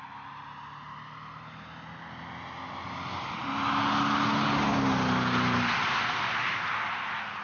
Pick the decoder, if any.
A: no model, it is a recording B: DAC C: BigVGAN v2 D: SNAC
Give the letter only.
A